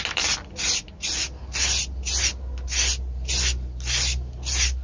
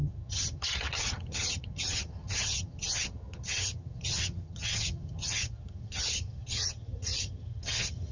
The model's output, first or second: second